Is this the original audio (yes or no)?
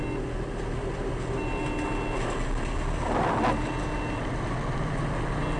yes